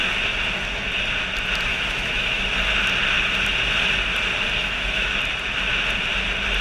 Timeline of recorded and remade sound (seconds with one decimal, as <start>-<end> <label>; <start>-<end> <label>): 0.0-1.7 recorded; 1.7-2.4 remade; 2.4-4.6 recorded; 4.6-5.1 remade; 5.1-6.6 recorded